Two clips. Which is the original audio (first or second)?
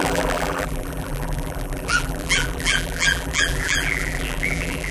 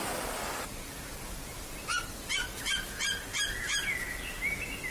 second